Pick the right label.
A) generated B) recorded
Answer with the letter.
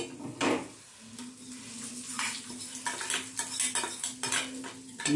B